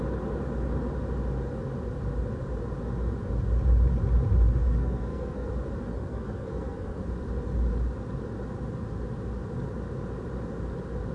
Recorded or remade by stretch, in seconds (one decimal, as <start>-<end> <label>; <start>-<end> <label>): 0.0-4.6 recorded; 4.6-5.5 remade; 5.5-5.9 recorded; 5.9-7.0 remade; 7.0-11.1 recorded